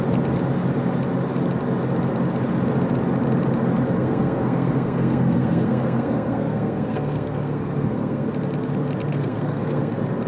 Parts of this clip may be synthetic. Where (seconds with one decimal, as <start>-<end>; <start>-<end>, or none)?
4.0-8.3; 9.1-9.9